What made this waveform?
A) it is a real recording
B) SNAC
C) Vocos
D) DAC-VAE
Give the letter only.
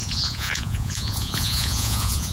C